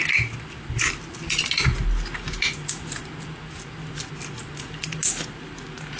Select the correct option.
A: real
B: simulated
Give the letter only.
A